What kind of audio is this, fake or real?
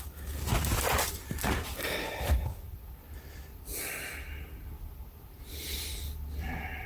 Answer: real